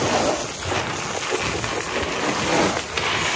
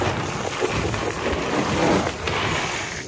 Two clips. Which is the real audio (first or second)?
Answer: first